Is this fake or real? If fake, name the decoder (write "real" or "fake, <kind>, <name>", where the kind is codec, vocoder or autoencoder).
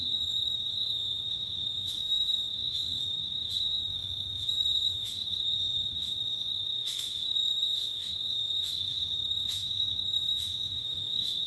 fake, autoencoder, DAC-VAE